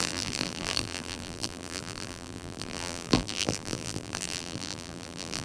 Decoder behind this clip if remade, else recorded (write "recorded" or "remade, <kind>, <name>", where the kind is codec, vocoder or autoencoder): remade, vocoder, BigVGAN v2